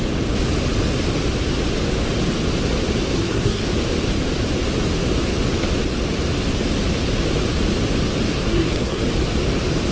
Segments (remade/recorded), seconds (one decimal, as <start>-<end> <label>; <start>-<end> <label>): 0.0-3.1 recorded; 3.1-3.6 remade; 3.6-8.3 recorded; 8.3-9.0 remade; 9.0-9.9 recorded